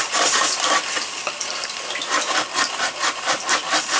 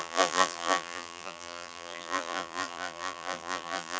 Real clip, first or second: first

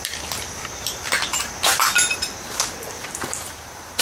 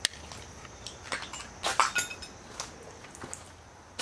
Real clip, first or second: second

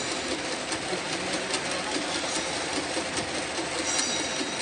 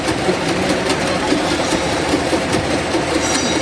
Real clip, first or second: first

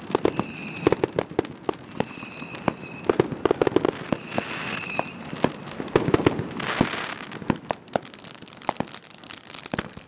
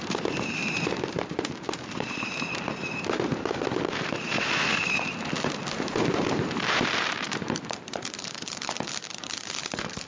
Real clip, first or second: first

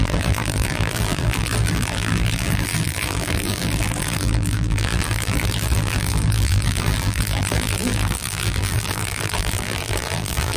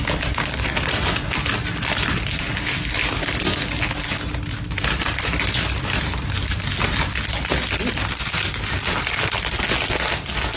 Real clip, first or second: second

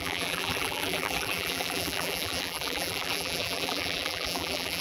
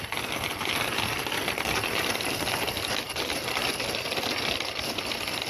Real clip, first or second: second